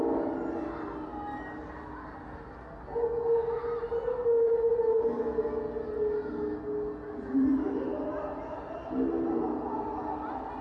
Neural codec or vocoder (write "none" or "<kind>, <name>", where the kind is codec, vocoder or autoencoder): none